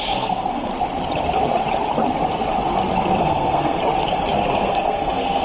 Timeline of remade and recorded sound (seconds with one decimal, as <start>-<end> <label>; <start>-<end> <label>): 0.0-0.7 remade; 0.7-3.2 recorded; 3.2-3.8 remade; 3.8-4.5 recorded; 4.5-5.4 remade